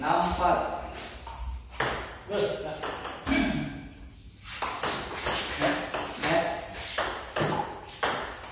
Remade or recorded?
recorded